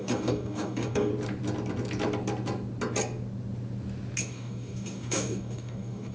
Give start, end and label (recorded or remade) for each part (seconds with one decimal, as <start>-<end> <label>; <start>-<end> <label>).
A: 0.0-1.1 remade; 1.1-4.2 recorded; 4.2-6.1 remade